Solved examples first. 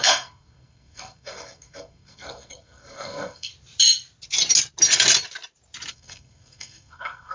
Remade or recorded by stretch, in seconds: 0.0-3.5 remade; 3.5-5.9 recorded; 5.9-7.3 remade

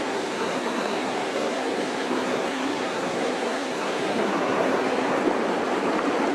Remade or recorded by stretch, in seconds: 0.0-5.2 remade; 5.2-6.3 recorded

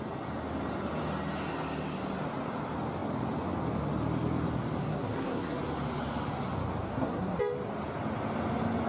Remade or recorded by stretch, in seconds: 0.0-4.8 recorded; 4.8-5.6 remade; 5.6-6.9 recorded; 6.9-7.4 remade; 7.4-8.9 recorded

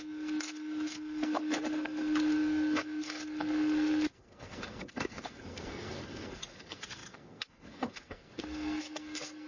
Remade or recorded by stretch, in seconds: 0.0-9.5 remade